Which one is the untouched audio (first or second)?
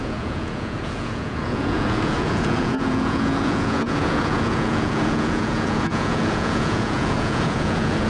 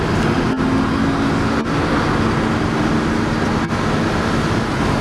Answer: second